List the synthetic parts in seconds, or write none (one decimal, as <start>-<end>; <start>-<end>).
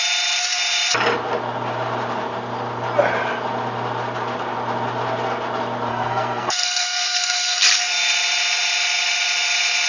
5.9-7.6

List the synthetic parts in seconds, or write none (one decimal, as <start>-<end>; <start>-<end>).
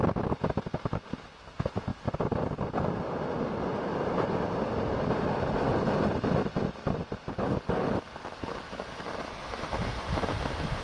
none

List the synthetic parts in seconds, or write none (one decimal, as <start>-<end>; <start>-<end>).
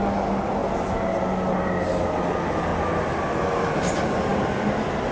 none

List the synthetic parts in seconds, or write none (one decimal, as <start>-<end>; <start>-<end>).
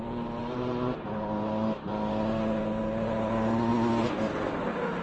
0.0-3.7; 4.6-5.0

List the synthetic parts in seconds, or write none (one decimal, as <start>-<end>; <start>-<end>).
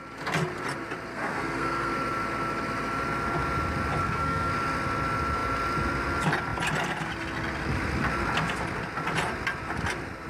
1.1-1.9; 4.0-4.5